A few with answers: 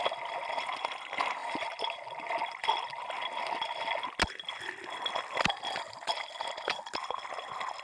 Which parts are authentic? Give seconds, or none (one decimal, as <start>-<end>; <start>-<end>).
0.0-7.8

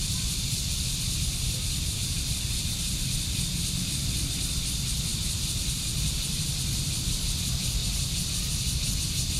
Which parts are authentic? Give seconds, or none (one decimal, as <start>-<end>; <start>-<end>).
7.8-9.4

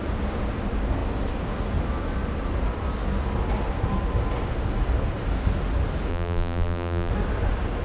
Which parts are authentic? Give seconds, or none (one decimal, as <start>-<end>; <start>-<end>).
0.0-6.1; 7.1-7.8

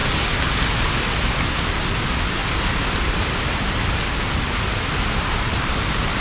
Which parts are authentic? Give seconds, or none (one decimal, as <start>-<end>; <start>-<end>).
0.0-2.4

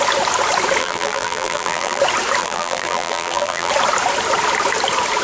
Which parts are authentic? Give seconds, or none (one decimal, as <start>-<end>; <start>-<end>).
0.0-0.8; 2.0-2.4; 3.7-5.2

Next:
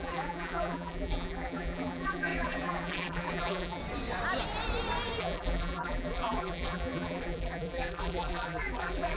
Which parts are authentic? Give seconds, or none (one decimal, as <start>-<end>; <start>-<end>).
3.8-5.2